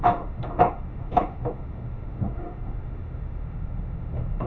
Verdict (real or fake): fake